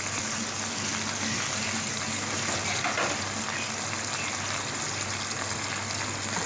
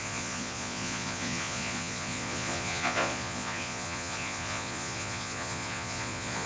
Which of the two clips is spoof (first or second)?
second